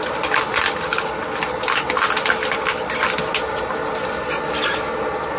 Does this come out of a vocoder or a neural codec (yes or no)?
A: no